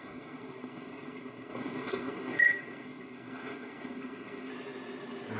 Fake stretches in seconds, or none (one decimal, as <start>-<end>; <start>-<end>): 0.0-4.5